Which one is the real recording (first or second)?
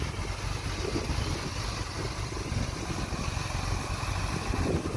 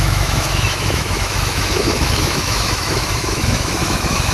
first